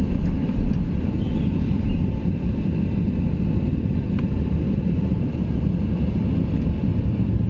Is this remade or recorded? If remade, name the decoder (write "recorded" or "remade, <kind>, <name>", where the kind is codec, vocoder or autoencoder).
recorded